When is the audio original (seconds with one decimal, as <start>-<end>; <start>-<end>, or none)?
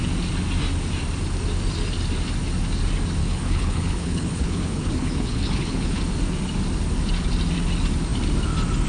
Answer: 0.0-3.2; 6.0-8.9